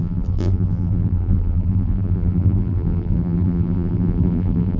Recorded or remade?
remade